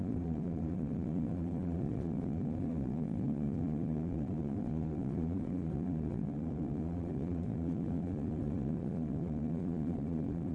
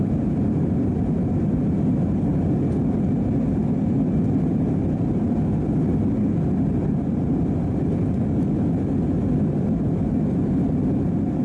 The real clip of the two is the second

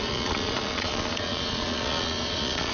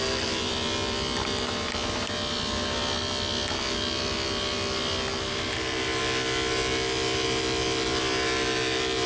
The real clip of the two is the second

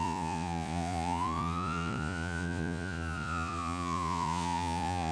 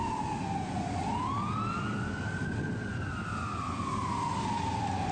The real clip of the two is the second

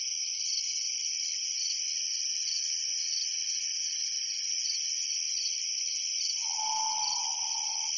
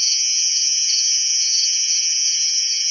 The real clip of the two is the first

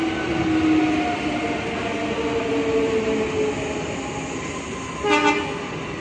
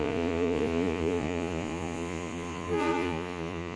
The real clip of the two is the first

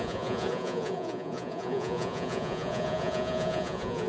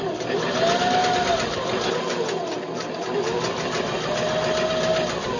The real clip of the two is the second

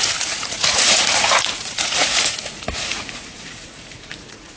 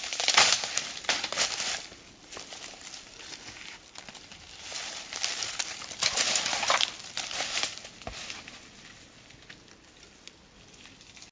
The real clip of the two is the second